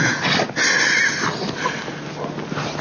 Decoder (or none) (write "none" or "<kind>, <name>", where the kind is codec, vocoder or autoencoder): none